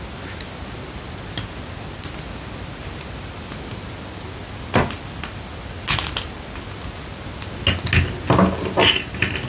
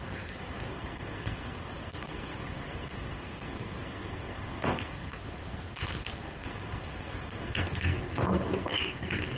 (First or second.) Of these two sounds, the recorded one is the first